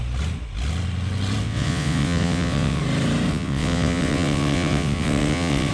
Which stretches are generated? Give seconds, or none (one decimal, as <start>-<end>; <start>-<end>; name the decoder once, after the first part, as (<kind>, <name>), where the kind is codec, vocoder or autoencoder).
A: 1.4-2.8 (vocoder, WaveNeXt); 3.3-5.7